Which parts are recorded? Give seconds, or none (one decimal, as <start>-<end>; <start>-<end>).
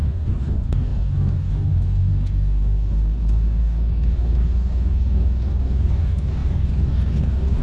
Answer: none